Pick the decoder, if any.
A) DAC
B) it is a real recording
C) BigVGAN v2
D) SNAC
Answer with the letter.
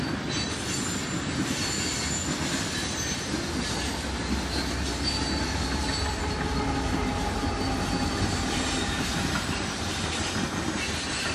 B